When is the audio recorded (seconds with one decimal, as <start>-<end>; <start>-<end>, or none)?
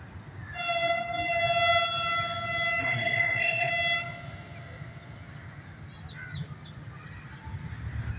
0.0-2.8; 3.7-8.2